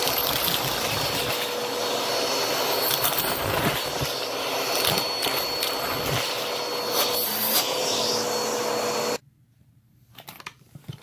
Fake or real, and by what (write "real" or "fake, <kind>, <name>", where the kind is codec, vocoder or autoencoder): real